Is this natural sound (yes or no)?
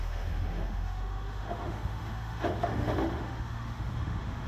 no